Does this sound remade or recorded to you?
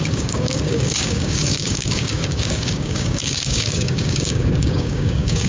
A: remade